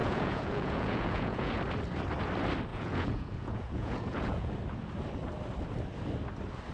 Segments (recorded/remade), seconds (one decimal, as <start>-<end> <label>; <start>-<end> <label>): 0.0-1.5 remade; 1.5-2.7 recorded; 2.7-4.5 remade; 4.5-6.7 recorded